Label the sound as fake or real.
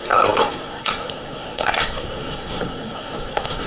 fake